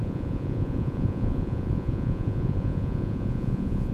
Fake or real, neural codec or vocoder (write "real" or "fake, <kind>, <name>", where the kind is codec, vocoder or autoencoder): fake, vocoder, Vocos